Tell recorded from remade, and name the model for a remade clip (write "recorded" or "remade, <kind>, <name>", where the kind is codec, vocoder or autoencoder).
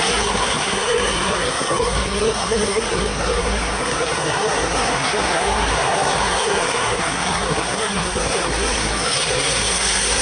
remade, codec, SNAC